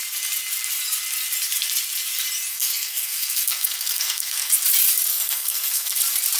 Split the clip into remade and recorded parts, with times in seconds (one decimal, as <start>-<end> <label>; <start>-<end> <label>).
0.0-2.5 recorded; 2.5-4.5 remade; 4.5-5.1 recorded; 5.1-6.0 remade; 6.0-6.4 recorded